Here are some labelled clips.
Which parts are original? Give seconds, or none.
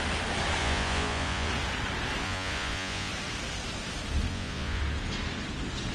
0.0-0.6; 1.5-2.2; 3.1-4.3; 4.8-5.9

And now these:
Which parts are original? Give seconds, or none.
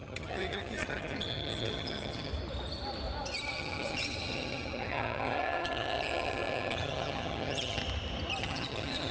2.3-3.5; 7.8-8.4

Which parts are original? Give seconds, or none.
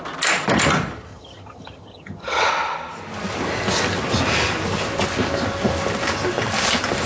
0.0-1.1; 2.5-7.1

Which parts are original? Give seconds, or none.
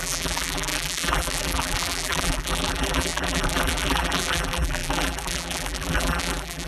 none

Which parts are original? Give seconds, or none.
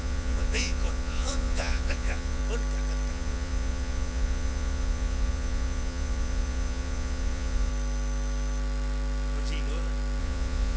2.4-3.1; 7.7-10.2